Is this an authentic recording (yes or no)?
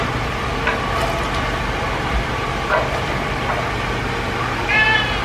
yes